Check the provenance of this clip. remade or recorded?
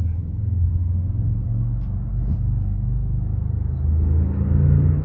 recorded